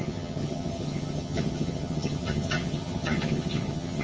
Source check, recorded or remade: remade